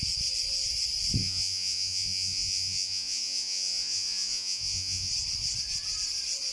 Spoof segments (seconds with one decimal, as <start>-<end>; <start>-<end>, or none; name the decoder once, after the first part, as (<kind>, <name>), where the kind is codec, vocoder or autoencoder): 1.2-5.1 (vocoder, Vocos)